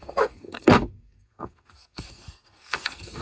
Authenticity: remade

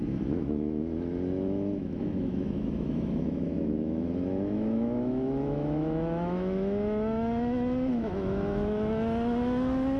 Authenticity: remade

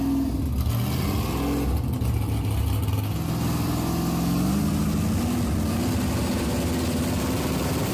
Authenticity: recorded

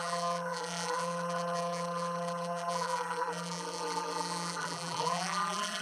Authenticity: remade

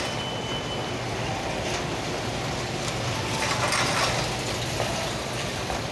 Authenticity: recorded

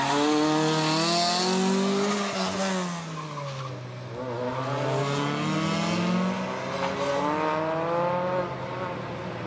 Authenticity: recorded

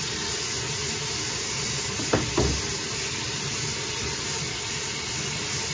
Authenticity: recorded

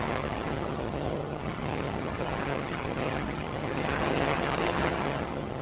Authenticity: remade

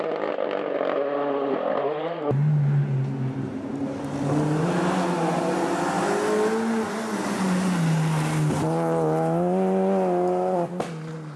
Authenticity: recorded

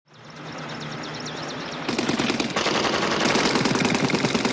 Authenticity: recorded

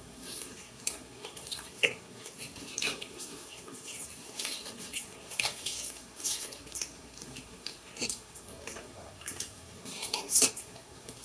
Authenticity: remade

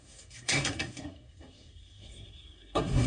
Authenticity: remade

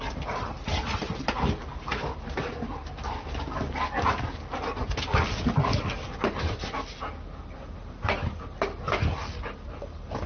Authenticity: recorded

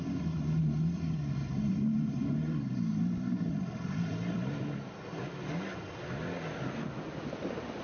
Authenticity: recorded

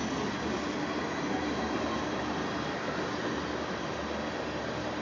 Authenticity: recorded